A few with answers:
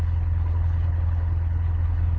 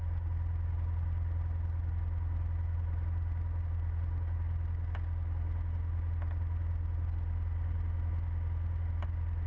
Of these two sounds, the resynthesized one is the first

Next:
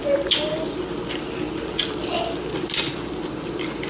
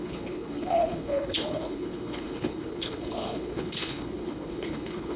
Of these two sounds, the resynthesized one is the second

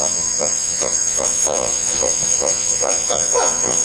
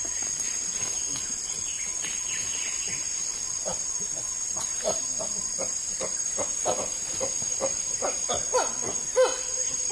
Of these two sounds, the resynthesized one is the first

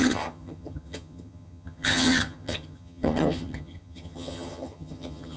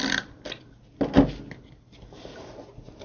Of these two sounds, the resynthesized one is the first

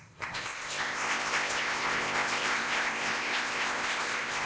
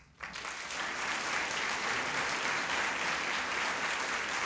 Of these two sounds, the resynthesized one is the first